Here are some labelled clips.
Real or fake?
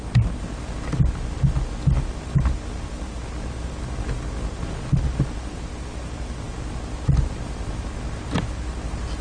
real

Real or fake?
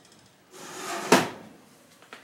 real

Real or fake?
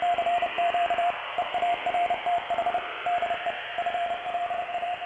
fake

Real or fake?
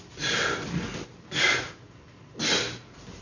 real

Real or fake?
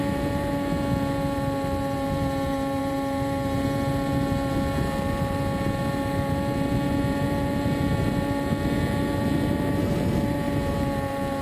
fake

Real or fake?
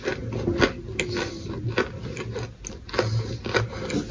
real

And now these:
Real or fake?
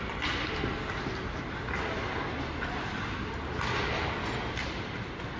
real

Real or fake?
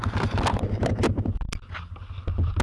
real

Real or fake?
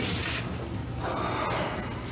real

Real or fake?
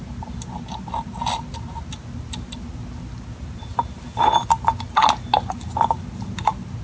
real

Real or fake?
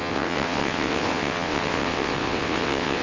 fake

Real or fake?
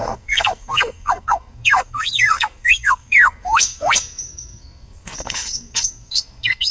fake